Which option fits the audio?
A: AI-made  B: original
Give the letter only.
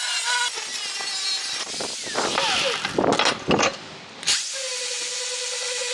B